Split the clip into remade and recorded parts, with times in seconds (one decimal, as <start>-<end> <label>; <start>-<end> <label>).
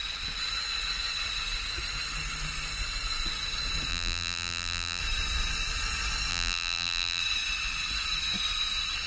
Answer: 0.0-3.9 recorded; 3.9-5.0 remade; 5.0-6.3 recorded; 6.3-7.2 remade; 7.2-9.1 recorded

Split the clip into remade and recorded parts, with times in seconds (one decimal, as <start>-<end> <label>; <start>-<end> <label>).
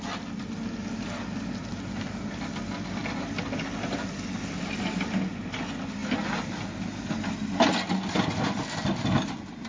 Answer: 0.0-9.7 recorded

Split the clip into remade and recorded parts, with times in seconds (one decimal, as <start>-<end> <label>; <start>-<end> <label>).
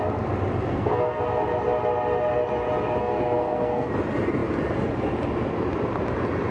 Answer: 0.0-0.7 recorded; 0.7-1.2 remade; 1.2-3.0 recorded; 3.0-3.9 remade; 3.9-6.5 recorded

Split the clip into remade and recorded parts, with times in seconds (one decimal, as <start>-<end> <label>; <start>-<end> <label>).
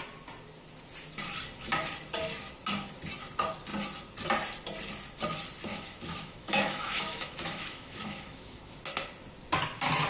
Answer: 0.0-5.7 recorded; 5.7-8.6 remade; 8.6-10.1 recorded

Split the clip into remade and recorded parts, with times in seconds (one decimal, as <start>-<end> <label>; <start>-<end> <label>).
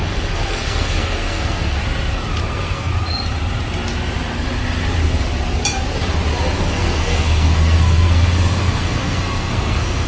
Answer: 0.0-1.8 remade; 1.8-2.4 recorded; 2.4-2.9 remade; 2.9-6.6 recorded; 6.6-10.1 remade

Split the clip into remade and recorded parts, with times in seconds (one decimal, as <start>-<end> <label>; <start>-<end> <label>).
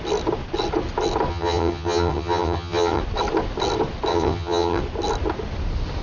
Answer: 0.0-1.3 recorded; 1.3-3.0 remade; 3.0-4.1 recorded; 4.1-4.8 remade; 4.8-6.0 recorded